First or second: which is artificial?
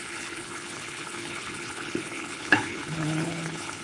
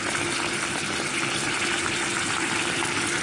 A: first